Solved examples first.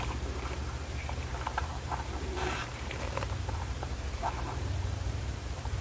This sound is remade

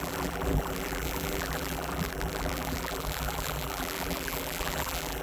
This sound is remade